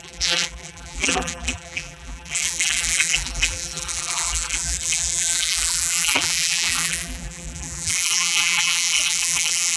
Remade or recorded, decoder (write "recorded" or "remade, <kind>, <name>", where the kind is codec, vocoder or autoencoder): remade, vocoder, BigVGAN v2